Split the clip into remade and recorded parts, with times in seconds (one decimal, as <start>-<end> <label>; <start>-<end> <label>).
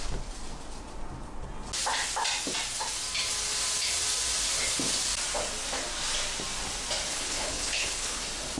0.0-7.1 recorded; 7.1-8.2 remade; 8.2-8.6 recorded